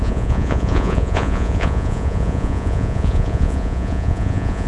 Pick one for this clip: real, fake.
fake